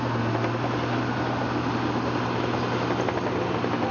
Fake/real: real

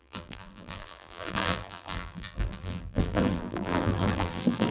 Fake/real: fake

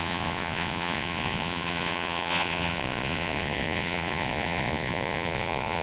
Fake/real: fake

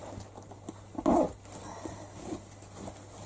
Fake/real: real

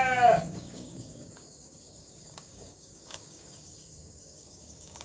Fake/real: fake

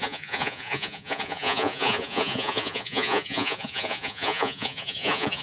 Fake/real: fake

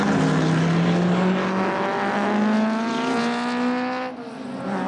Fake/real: real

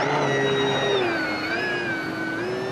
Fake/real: real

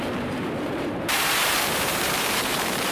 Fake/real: fake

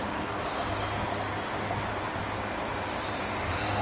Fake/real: real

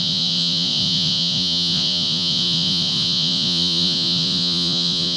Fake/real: fake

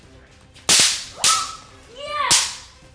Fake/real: real